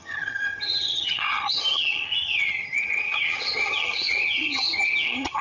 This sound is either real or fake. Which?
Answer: fake